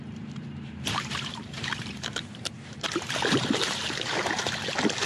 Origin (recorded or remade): remade